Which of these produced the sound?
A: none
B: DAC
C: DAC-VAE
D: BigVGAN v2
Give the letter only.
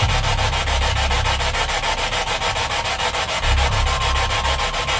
A